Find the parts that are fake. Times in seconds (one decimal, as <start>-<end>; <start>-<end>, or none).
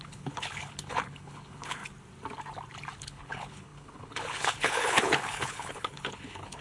0.0-1.8; 3.0-6.6